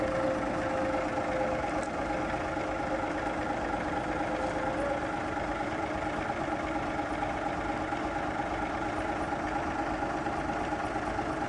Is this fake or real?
real